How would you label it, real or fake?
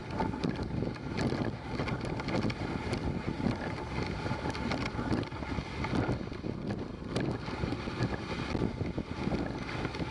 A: real